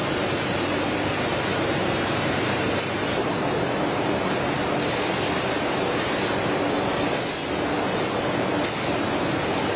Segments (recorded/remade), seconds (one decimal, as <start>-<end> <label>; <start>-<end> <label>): 0.0-4.5 remade; 4.5-9.8 recorded